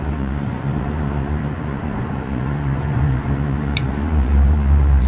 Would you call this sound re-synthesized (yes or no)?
yes